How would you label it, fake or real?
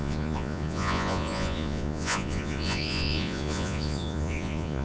fake